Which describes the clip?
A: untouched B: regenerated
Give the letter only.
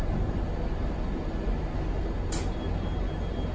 A